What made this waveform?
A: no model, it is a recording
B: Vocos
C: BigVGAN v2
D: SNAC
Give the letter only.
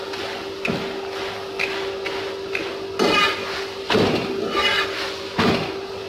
A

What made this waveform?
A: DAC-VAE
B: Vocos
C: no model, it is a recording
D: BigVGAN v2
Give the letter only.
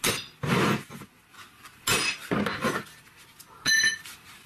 C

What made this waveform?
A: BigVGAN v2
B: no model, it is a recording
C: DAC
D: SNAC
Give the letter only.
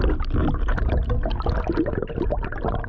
B